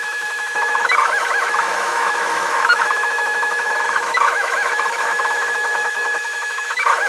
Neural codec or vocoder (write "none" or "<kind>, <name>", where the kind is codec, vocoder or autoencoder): autoencoder, DAC-VAE